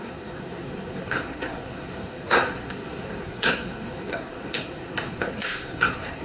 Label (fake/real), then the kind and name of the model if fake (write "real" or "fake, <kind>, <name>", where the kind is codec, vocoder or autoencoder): fake, codec, SNAC